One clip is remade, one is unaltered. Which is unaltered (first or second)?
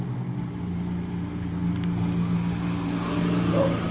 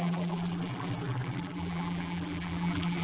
first